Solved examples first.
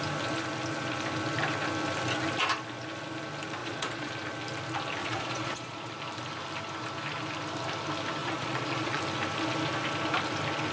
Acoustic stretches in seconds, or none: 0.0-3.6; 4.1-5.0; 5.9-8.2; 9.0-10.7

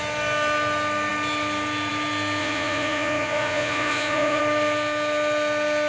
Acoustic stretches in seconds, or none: 0.0-2.4; 4.4-5.9

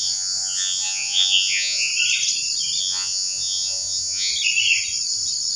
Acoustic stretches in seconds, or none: 1.9-2.8; 4.3-5.6

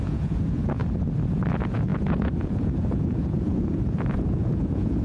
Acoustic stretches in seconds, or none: 0.8-1.5

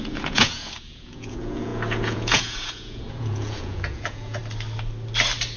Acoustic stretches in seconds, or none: 4.4-5.6

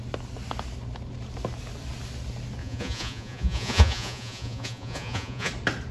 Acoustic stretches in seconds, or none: 0.0-2.6; 5.5-5.9